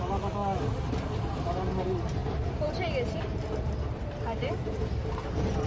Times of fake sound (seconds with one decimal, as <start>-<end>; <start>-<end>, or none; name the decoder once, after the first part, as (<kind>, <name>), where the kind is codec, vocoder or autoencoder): 2.2-2.9 (vocoder, BigVGAN v2); 3.3-4.8